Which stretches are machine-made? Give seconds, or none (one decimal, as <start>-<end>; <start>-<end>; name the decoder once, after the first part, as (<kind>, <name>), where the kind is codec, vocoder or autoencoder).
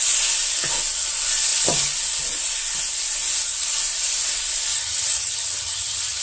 4.7-6.2 (vocoder, HiFi-GAN)